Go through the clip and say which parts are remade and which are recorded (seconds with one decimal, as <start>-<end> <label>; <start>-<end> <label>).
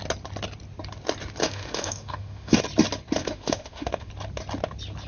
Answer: 0.0-1.4 recorded; 1.4-2.6 remade; 2.6-3.2 recorded; 3.2-4.1 remade; 4.1-5.1 recorded